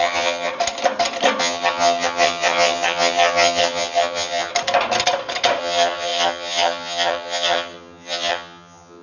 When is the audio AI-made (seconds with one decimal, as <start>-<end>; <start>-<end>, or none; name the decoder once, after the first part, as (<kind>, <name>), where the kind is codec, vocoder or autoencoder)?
0.0-0.5 (vocoder, HiFi-GAN); 1.4-4.5; 5.6-9.0